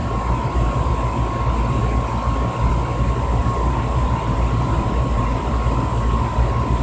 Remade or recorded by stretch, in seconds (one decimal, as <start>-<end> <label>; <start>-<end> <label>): 0.0-0.9 remade; 0.9-3.4 recorded; 3.4-5.5 remade; 5.5-6.8 recorded